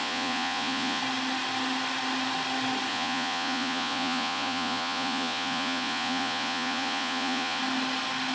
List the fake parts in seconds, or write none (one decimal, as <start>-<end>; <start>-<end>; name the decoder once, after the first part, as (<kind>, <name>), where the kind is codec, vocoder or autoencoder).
0.0-1.0 (vocoder, Vocos); 2.9-7.6